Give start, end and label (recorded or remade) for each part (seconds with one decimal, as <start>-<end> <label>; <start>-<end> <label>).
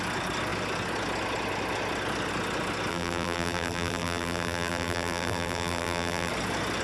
0.0-2.9 recorded; 2.9-6.3 remade; 6.3-6.8 recorded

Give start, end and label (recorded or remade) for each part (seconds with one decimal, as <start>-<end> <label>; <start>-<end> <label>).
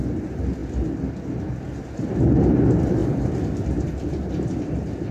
0.0-3.0 recorded; 3.0-4.5 remade; 4.5-5.1 recorded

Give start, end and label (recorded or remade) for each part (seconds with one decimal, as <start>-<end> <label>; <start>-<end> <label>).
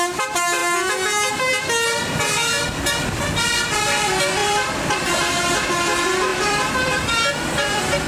0.0-4.4 recorded; 4.4-5.2 remade; 5.2-6.3 recorded; 6.3-8.1 remade